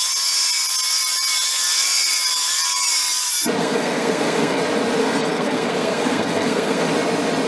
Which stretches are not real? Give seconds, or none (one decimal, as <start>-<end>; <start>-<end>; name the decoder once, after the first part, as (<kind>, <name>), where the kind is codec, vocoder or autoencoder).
3.6-4.6 (codec, SNAC); 5.0-6.8